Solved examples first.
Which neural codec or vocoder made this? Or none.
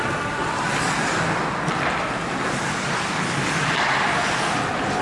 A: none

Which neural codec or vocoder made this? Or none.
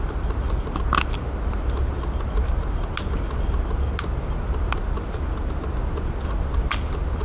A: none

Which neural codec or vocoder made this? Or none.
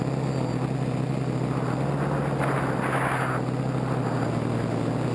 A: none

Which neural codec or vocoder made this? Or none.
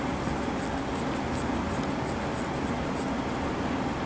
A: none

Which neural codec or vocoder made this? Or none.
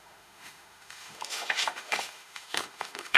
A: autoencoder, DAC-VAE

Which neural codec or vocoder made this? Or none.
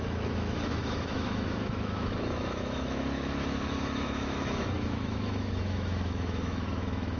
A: autoencoder, DAC-VAE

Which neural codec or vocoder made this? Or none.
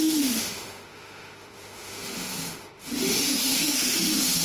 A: autoencoder, DAC-VAE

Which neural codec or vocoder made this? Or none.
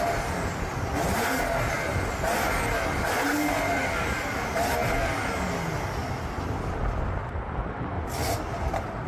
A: none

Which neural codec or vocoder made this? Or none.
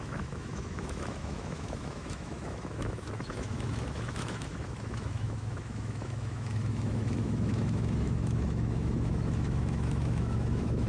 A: autoencoder, DAC-VAE